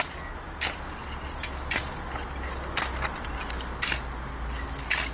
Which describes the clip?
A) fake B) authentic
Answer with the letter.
B